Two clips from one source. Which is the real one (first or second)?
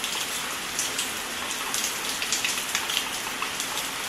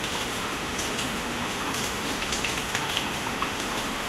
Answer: first